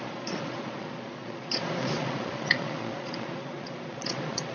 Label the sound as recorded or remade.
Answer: remade